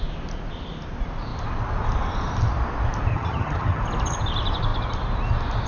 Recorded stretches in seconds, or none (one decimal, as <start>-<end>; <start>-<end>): 0.0-3.1; 3.8-5.7